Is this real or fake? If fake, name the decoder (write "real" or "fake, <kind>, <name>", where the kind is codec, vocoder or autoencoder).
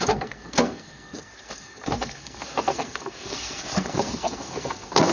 fake, codec, SNAC